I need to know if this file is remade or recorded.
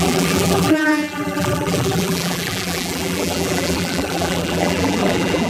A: remade